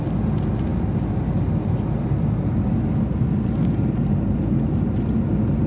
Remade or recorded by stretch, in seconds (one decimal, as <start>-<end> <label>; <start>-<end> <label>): 0.0-5.7 recorded